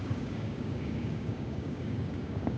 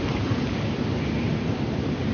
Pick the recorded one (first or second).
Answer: second